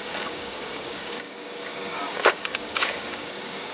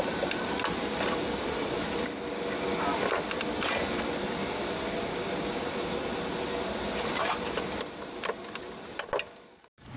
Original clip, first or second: second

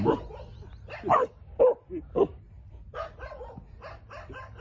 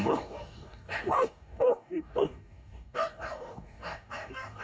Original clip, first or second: first